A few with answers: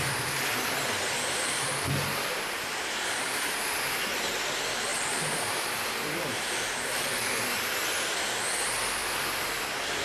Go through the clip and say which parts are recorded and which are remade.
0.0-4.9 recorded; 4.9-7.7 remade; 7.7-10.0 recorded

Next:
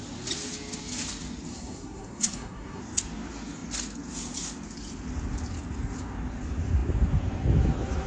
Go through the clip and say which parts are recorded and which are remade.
0.0-1.5 recorded; 1.5-2.8 remade; 2.8-8.1 recorded

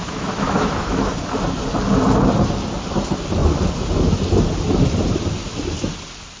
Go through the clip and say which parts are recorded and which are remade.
0.0-1.1 remade; 1.1-6.4 recorded

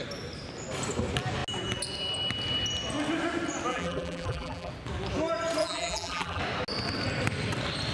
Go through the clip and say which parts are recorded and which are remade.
0.0-3.7 recorded; 3.7-4.7 remade; 4.7-5.6 recorded; 5.6-6.4 remade; 6.4-7.9 recorded

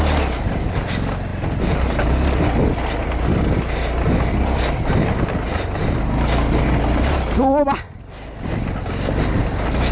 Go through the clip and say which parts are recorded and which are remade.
0.0-9.9 recorded